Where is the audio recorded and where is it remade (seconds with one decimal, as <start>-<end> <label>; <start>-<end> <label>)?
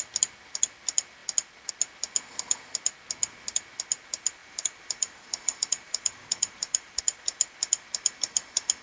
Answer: 0.0-4.4 recorded; 4.4-7.0 remade; 7.0-8.8 recorded